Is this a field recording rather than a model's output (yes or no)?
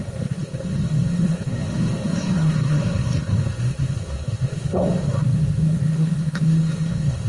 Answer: no